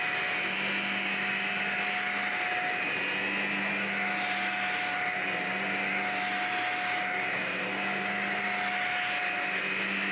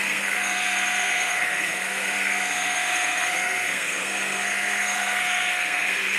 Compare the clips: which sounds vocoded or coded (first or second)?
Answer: second